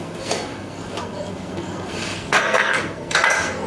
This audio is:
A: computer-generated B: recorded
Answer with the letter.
A